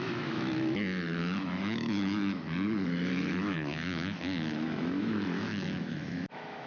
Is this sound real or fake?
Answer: fake